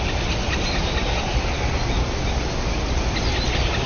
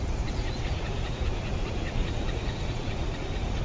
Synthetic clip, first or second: second